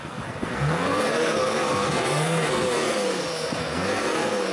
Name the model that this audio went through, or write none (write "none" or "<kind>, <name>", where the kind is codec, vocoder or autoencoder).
codec, SNAC